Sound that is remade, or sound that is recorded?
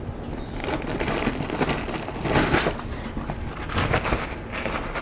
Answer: recorded